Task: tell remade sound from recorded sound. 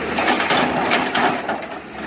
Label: recorded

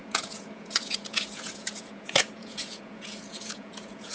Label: remade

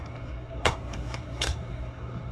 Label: remade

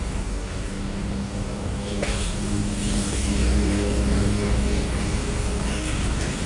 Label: remade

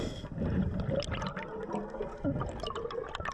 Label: recorded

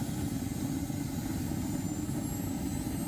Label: recorded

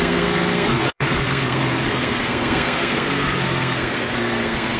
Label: remade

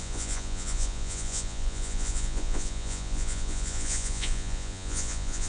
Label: remade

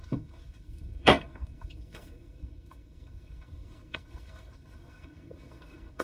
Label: remade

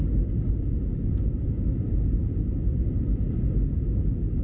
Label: recorded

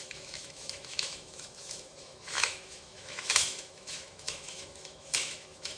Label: remade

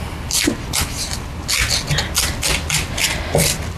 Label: recorded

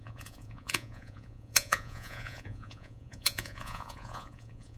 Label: remade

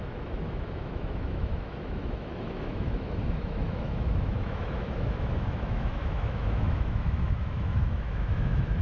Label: remade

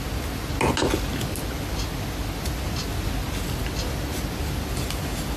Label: recorded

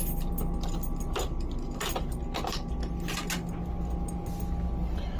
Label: recorded